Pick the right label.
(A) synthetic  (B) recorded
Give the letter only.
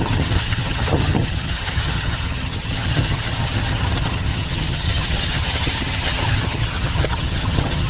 A